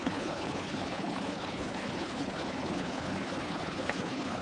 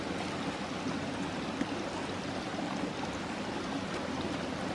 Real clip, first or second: second